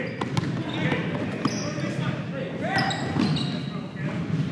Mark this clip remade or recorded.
recorded